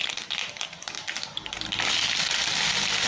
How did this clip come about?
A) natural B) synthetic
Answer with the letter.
A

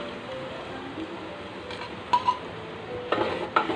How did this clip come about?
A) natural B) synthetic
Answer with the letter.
A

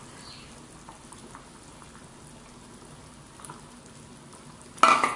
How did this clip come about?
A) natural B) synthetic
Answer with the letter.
A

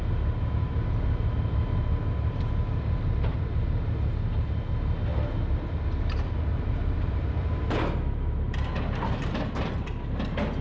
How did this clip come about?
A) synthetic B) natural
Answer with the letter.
B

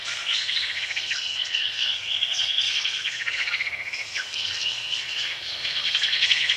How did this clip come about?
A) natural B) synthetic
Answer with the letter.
B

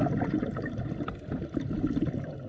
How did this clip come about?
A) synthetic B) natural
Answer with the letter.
B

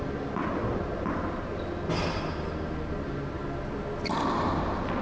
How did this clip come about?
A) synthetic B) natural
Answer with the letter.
B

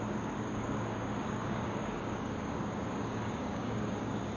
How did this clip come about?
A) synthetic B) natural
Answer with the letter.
A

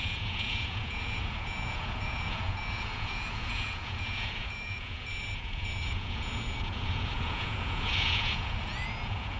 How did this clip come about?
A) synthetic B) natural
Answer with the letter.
A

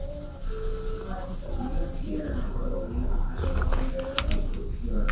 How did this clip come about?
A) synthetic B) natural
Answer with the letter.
B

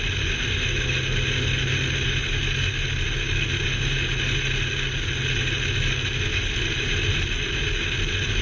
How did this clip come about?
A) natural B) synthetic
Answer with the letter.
A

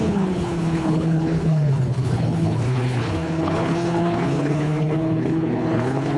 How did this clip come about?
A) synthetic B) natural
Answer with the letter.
A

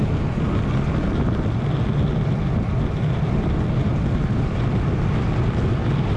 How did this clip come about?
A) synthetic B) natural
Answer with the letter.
B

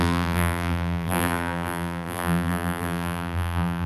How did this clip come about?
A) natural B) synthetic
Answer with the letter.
B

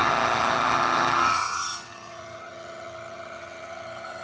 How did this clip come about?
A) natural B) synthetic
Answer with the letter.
B